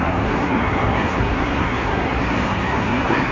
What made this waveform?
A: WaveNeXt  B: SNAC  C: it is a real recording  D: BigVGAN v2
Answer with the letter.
B